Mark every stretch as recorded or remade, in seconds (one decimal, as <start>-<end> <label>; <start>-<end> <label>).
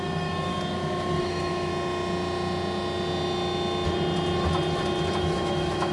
0.0-0.5 remade; 0.5-1.2 recorded; 1.2-1.7 remade; 1.7-5.2 recorded; 5.2-5.9 remade